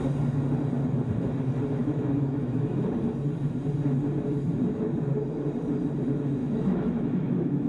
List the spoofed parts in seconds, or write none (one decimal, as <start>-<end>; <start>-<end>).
1.8-2.8; 6.4-7.7